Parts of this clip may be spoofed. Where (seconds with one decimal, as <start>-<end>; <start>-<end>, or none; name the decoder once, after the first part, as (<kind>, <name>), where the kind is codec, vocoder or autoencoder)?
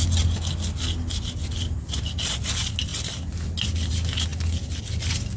none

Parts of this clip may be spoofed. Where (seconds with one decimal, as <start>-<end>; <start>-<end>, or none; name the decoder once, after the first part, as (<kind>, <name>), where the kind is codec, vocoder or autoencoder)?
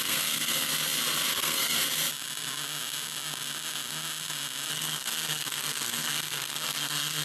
0.0-0.7 (codec, SNAC); 1.3-1.8; 4.7-7.2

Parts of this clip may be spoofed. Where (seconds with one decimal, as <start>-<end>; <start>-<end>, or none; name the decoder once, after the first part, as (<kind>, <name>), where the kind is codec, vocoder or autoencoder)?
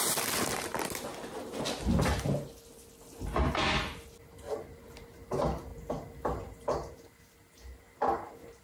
none